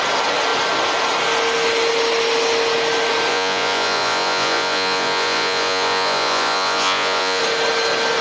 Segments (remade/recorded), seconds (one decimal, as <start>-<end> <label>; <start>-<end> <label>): 0.0-3.3 recorded; 3.3-7.4 remade; 7.4-8.2 recorded